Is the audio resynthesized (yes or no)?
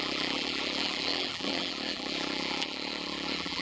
yes